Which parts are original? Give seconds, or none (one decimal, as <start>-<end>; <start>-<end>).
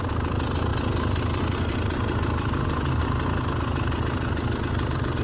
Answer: 0.0-5.2